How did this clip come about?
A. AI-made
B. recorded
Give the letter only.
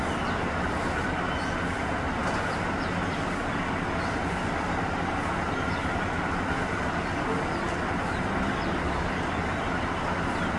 B